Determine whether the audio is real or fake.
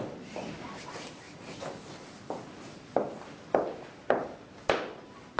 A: real